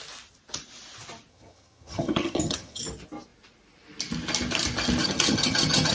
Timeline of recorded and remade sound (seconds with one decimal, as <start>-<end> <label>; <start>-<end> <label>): 0.0-1.3 recorded; 1.3-2.8 remade; 2.8-5.0 recorded; 5.0-5.9 remade